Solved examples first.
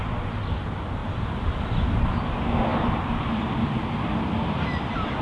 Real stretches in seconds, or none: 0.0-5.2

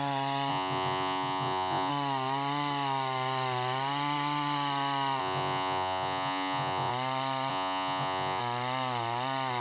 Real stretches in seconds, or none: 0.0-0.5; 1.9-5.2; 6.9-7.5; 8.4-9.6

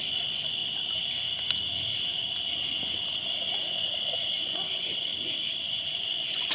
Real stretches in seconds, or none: 0.6-4.4; 5.1-5.9

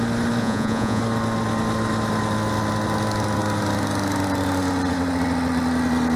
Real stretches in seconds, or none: 0.0-0.4; 1.0-6.2